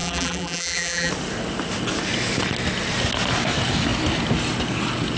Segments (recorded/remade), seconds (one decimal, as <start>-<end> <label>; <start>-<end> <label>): 0.0-1.1 remade; 1.1-5.2 recorded